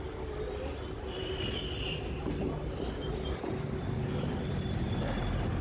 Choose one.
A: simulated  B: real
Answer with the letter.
B